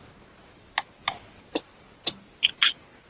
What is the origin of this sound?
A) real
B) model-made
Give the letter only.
A